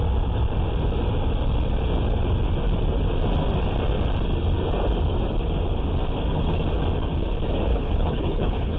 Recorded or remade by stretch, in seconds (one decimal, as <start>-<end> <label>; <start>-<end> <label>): 0.0-7.7 recorded; 7.7-8.8 remade